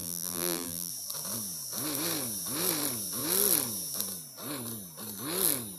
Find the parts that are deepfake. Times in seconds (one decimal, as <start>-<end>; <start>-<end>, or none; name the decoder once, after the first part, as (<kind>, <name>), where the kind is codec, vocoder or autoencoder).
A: 0.0-0.9 (vocoder, BigVGAN v2)